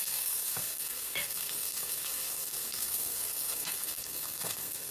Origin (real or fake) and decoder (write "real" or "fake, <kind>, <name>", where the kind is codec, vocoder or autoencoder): fake, codec, SNAC